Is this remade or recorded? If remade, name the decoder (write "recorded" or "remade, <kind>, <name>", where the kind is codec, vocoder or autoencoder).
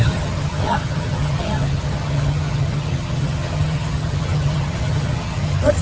remade, vocoder, HiFi-GAN